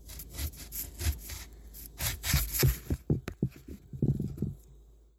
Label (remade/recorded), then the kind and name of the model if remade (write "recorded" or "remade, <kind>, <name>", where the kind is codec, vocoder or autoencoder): recorded